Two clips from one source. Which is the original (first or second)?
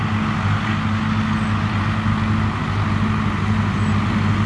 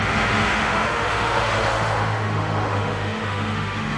first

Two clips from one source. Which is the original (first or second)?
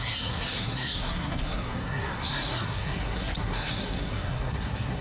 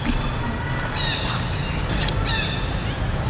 second